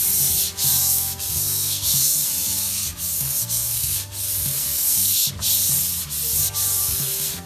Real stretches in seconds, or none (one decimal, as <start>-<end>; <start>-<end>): 0.0-0.8; 5.3-6.8